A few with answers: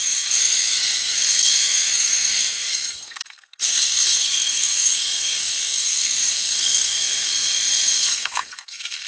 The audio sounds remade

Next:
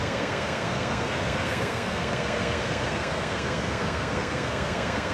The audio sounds remade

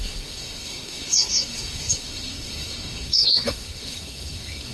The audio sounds remade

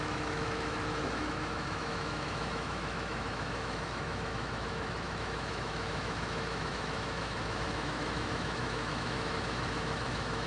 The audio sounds remade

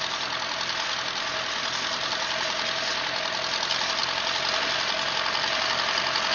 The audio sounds recorded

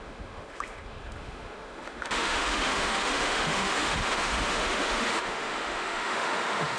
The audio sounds remade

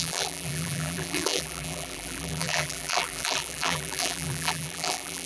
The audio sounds remade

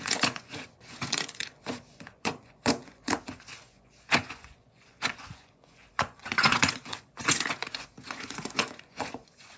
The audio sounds remade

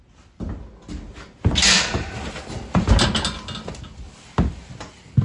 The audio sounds recorded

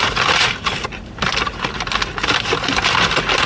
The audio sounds recorded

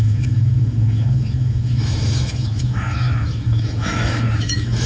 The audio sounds remade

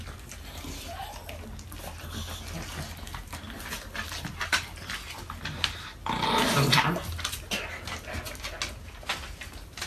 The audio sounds recorded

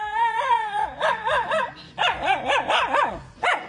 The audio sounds remade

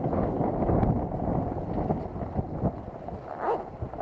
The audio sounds recorded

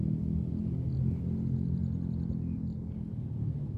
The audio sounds recorded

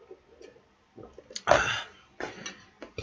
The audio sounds recorded